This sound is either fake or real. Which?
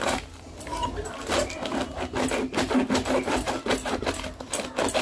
real